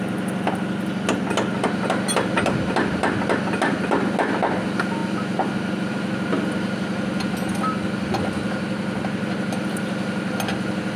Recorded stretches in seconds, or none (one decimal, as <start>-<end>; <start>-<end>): 0.0-11.0